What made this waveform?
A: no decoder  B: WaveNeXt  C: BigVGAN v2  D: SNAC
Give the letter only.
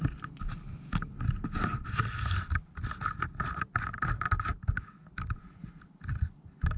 A